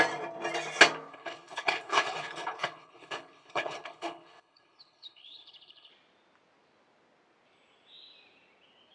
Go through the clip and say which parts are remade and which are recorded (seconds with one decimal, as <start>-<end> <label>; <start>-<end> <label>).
0.0-1.1 recorded; 1.1-5.9 remade; 5.9-8.9 recorded